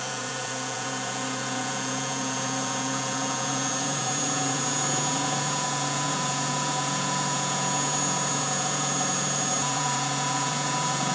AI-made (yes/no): yes